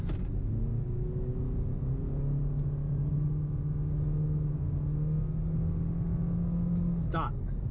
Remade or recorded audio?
recorded